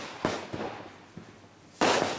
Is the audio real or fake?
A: real